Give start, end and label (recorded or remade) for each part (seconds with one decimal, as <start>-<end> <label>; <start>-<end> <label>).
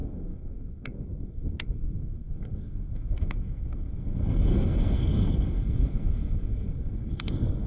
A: 0.0-7.7 remade